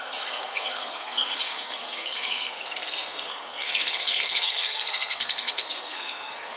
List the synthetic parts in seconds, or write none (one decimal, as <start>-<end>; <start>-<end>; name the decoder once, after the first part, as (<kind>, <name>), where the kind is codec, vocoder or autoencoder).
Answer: 0.0-6.6 (codec, SNAC)